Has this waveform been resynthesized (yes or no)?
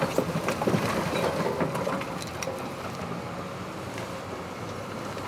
no